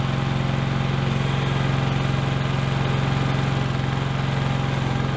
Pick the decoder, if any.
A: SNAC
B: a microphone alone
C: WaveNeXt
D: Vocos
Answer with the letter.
B